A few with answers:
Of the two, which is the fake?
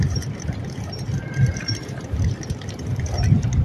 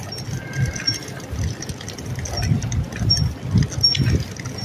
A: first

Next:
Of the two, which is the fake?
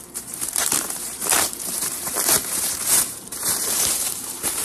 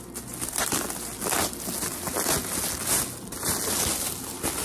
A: first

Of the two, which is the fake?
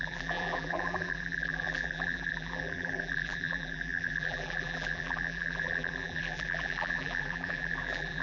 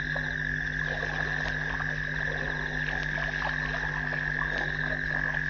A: first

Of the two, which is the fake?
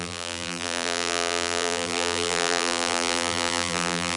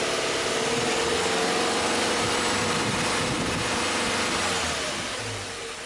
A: first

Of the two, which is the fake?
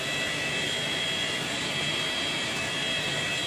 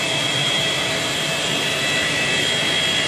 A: second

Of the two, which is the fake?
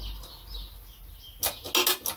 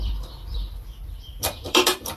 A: second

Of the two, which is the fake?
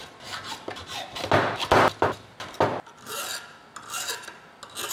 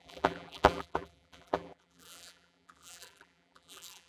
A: second